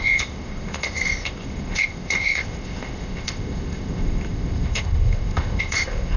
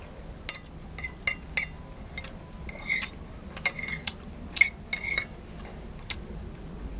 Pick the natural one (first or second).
second